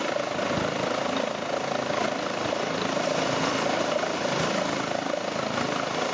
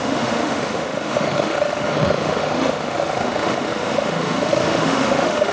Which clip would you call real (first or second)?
first